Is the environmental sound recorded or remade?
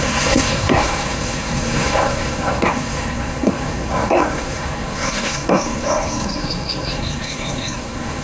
remade